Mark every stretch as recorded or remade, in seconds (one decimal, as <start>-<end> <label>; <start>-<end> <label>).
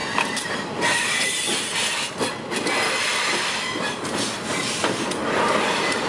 0.0-1.4 remade; 1.4-5.2 recorded; 5.2-6.1 remade